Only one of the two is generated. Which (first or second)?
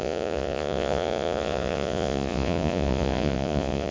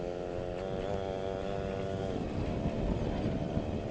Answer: first